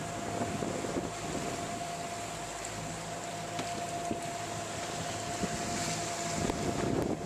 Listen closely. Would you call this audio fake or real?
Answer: real